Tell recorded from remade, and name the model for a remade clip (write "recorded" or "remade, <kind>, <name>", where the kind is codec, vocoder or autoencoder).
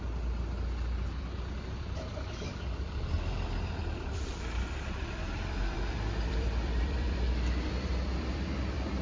remade, vocoder, BigVGAN v2